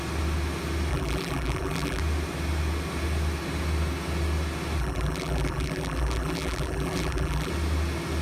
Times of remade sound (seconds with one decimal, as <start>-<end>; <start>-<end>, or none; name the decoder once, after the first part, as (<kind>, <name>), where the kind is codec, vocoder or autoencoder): 0.9-2.0 (vocoder, BigVGAN v2); 4.8-7.5